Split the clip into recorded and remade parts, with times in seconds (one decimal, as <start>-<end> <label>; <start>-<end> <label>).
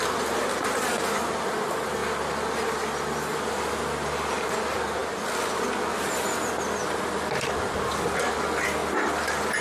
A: 0.0-6.8 recorded; 6.8-8.3 remade; 8.3-8.8 recorded; 8.8-9.6 remade